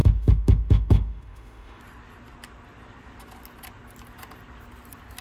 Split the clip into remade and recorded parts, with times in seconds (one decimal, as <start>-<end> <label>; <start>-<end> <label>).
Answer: 0.0-1.8 remade; 1.8-5.2 recorded